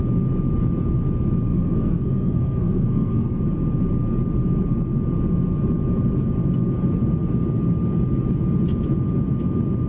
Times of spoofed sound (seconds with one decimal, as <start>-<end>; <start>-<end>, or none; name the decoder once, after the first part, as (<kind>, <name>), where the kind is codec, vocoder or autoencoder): 1.5-3.4 (codec, SNAC)